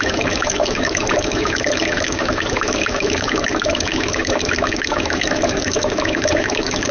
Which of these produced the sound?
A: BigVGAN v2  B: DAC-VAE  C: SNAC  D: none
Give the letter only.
B